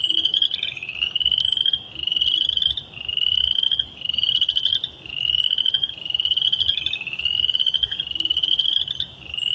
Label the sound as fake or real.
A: real